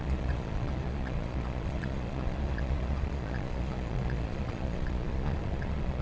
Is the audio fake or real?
fake